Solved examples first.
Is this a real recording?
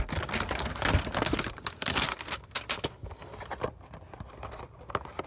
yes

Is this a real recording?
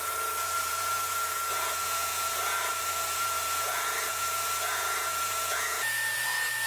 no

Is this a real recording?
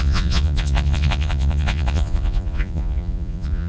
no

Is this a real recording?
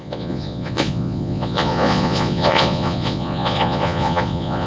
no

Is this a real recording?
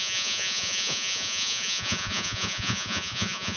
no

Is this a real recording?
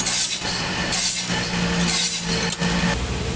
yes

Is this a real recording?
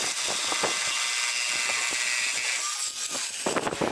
yes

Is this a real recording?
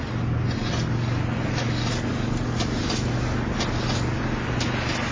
yes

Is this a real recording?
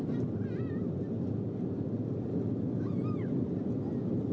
yes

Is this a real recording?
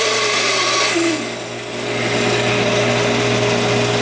yes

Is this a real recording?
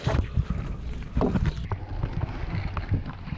yes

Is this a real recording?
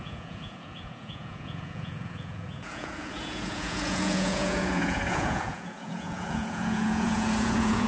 no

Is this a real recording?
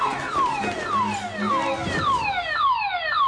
yes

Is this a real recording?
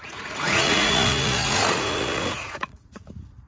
no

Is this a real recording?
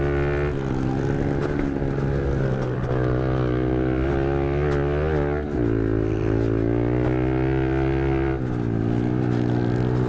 yes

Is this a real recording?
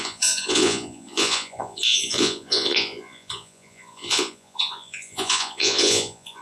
no